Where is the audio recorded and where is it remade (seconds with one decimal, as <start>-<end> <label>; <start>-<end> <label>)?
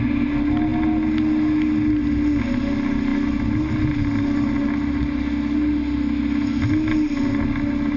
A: 0.0-8.0 recorded